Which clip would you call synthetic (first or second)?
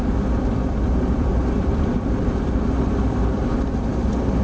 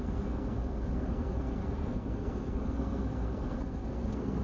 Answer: second